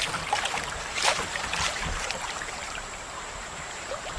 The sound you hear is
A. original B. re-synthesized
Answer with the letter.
B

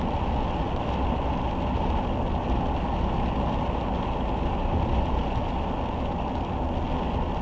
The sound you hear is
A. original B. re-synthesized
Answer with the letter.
A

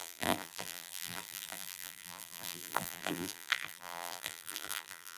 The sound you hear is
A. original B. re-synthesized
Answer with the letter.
B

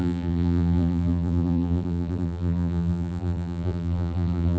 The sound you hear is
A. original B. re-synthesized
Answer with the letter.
B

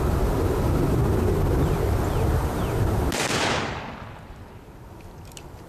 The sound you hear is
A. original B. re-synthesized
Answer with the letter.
A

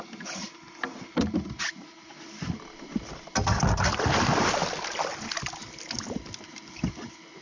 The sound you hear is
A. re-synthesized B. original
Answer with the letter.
B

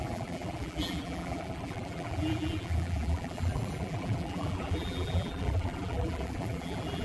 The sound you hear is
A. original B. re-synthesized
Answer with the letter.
B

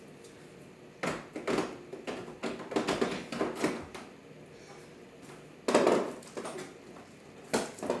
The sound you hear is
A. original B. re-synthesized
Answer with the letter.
A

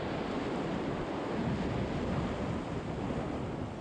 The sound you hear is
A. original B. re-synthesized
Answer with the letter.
A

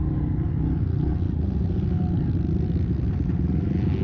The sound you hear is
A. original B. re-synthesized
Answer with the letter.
A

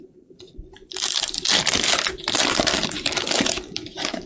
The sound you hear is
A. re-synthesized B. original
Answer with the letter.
A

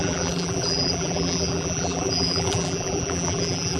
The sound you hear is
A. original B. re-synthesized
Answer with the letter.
B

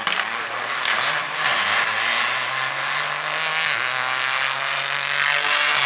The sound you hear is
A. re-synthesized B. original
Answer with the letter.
B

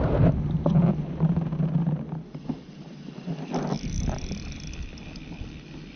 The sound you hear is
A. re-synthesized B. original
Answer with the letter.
B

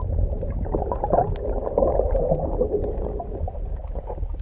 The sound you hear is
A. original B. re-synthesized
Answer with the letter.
A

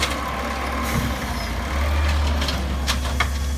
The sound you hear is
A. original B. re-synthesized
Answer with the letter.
A